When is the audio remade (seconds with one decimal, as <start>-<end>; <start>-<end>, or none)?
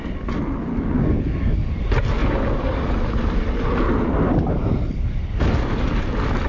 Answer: none